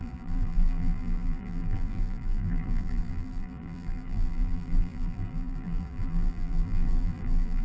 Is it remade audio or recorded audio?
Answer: remade